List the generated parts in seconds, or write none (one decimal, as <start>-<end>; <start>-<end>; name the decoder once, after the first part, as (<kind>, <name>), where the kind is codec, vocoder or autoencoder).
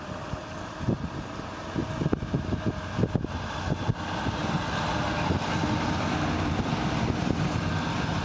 none